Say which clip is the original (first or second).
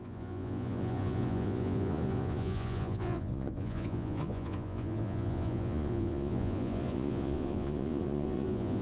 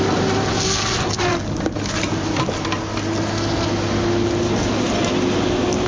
second